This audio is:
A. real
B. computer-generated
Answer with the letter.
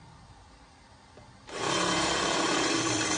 B